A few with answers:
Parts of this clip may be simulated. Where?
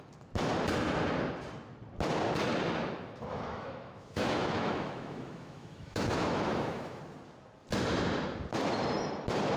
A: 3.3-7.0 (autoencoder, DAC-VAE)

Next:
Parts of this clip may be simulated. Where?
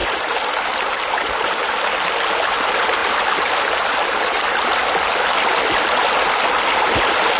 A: none